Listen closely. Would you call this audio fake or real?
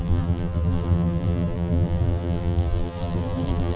fake